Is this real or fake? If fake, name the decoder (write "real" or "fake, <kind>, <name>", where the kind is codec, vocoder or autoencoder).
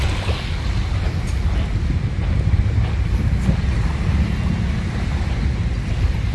real